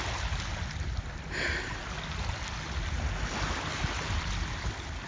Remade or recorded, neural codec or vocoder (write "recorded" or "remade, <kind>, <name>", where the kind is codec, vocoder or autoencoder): recorded